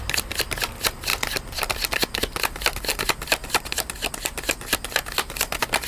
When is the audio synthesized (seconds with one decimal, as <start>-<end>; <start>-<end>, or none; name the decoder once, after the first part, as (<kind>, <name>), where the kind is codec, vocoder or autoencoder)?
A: none